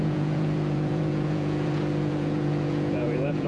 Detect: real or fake fake